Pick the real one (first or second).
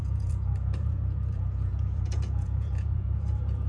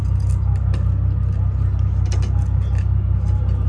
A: second